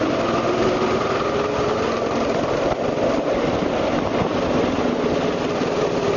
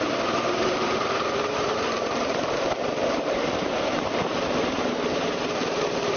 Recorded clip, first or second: first